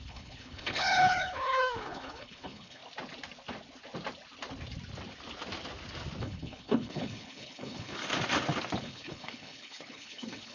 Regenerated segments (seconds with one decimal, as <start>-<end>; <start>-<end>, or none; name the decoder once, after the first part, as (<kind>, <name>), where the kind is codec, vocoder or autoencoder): 0.0-2.8 (codec, HILCodec); 6.2-8.0; 8.8-10.5

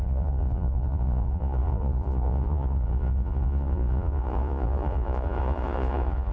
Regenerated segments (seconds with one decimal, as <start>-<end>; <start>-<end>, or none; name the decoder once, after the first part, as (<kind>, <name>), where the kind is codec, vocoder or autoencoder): 0.0-6.3 (vocoder, Vocos)

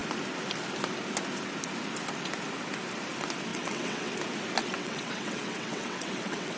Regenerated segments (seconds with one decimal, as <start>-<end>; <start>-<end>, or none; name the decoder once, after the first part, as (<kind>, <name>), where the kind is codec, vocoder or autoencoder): 3.5-4.1 (vocoder, WaveNeXt); 4.6-6.6

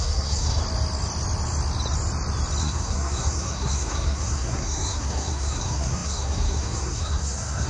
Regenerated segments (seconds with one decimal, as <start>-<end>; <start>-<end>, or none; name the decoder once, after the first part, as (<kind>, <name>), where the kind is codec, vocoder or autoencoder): 0.0-0.6 (codec, SNAC); 2.6-7.7

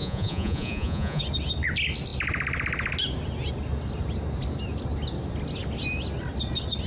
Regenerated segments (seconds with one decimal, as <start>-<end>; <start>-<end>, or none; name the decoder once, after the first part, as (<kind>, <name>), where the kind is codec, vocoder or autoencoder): 0.0-1.2 (vocoder, Vocos)

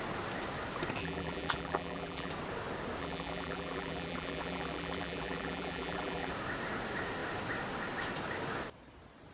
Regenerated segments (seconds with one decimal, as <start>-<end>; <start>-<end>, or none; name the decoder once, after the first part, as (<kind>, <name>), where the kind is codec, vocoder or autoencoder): 1.0-2.3 (vocoder, BigVGAN v2); 3.0-6.3